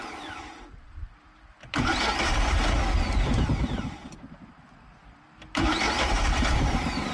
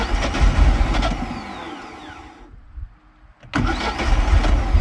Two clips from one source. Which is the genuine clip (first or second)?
second